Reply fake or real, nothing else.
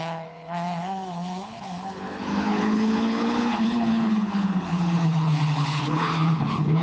fake